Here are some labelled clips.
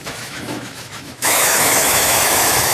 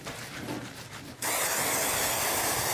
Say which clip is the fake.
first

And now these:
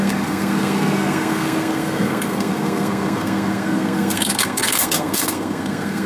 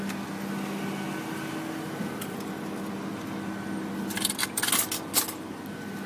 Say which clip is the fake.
first